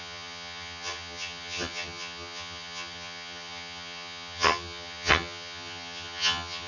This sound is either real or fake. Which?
fake